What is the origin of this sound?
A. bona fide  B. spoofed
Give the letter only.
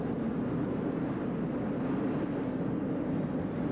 A